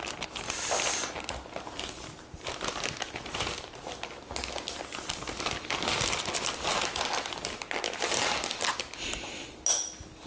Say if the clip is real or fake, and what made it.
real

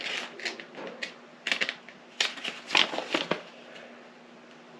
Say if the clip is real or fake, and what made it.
real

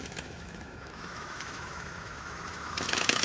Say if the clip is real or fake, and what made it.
fake, autoencoder, DAC-VAE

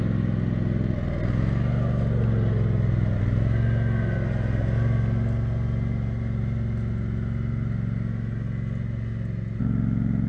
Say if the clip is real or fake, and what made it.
real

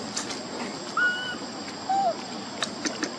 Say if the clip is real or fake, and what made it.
real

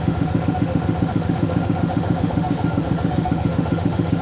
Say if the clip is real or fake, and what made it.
fake, autoencoder, DAC-VAE